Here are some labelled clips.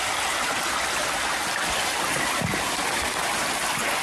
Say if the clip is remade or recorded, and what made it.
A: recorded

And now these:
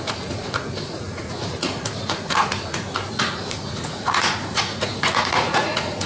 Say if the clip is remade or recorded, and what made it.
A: remade, vocoder, Vocos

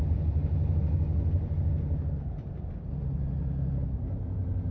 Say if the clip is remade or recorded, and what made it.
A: recorded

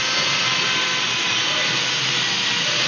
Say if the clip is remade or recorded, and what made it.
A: recorded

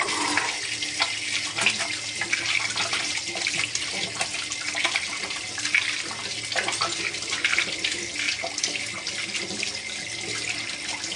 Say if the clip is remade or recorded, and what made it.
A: recorded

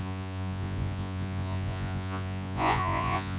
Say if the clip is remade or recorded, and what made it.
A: remade, vocoder, Vocos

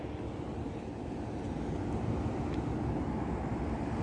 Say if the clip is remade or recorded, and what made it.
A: recorded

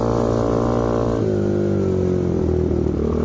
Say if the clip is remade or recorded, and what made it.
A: recorded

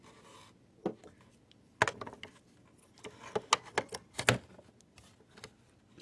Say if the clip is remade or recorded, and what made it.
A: recorded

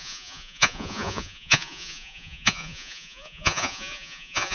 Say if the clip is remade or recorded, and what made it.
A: remade, vocoder, Vocos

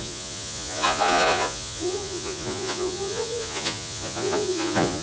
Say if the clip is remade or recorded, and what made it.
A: remade, vocoder, Vocos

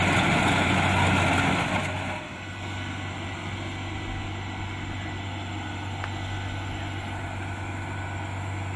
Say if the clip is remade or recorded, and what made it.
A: recorded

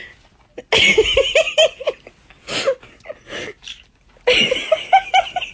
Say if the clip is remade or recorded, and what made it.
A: recorded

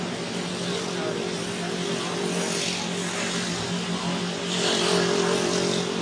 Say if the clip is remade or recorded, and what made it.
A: recorded